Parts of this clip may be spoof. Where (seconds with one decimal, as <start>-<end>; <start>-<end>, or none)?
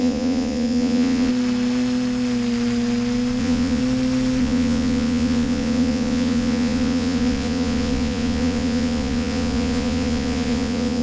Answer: 0.0-1.3; 3.4-3.8; 4.4-11.0